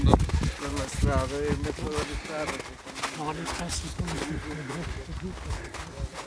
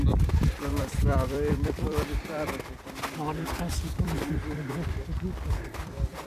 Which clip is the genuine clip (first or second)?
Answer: first